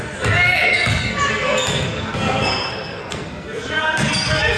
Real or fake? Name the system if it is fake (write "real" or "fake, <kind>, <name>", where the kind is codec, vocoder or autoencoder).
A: fake, codec, SNAC